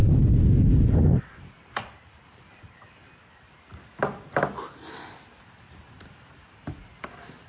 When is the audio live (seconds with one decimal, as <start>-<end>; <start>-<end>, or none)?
0.0-1.4; 3.7-6.5